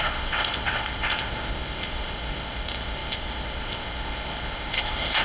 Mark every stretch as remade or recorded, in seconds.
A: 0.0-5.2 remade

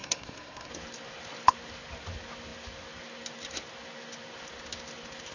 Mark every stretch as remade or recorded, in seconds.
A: 0.0-0.7 remade; 0.7-5.3 recorded

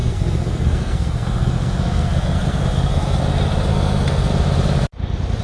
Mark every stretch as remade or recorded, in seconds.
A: 0.0-3.2 remade; 3.2-3.7 recorded; 3.7-4.3 remade; 4.3-5.4 recorded

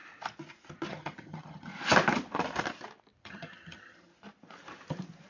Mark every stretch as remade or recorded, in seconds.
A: 0.0-0.9 recorded; 0.9-1.7 remade; 1.7-3.2 recorded; 3.2-4.1 remade; 4.1-5.3 recorded

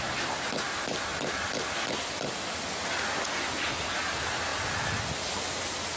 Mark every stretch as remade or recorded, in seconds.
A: 0.0-6.0 recorded

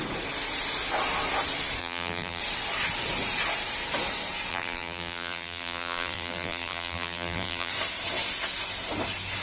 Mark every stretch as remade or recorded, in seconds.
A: 0.0-1.8 recorded; 1.8-2.4 remade; 2.4-4.5 recorded; 4.5-7.7 remade; 7.7-9.4 recorded

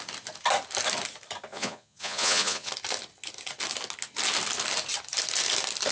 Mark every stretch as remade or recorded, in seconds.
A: 0.0-1.5 recorded; 1.5-2.7 remade; 2.7-5.9 recorded

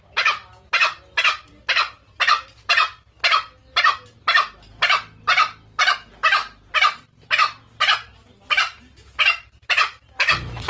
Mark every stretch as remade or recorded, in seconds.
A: 0.0-10.7 recorded